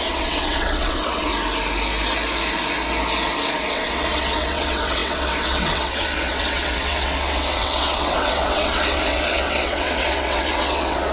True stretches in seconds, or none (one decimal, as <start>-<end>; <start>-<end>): 1.3-3.7